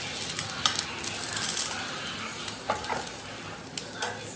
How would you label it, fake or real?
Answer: real